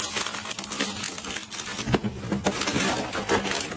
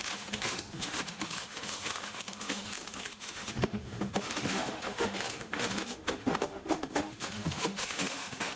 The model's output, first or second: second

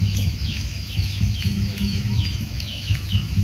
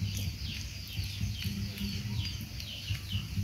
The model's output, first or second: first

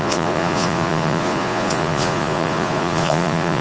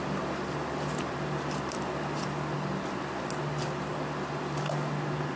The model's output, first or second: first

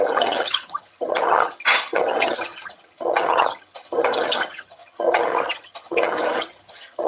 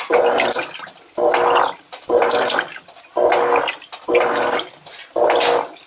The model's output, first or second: first